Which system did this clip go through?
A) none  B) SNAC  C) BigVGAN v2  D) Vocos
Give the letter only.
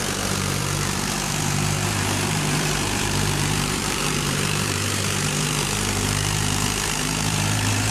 C